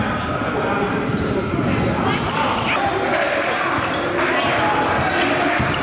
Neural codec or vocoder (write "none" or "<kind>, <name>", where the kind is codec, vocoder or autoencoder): none